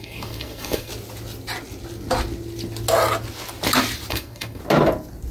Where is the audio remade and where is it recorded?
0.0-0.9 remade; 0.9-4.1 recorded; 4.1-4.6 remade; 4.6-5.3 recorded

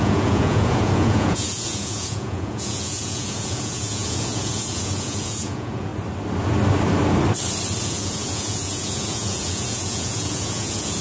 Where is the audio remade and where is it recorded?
0.0-5.9 remade; 5.9-7.8 recorded; 7.8-11.0 remade